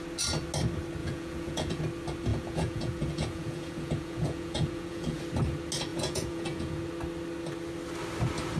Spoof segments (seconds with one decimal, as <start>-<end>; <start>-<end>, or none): 1.0-1.8; 2.3-5.2; 5.9-6.8